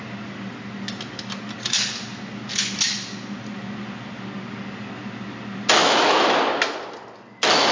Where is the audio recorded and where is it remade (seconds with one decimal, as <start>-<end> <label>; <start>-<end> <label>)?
0.0-5.8 recorded; 5.8-6.4 remade; 6.4-7.7 recorded